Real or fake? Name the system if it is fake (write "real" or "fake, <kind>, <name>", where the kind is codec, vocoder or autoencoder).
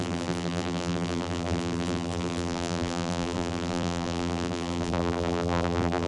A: fake, vocoder, BigVGAN v2